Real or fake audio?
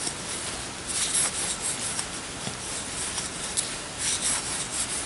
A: real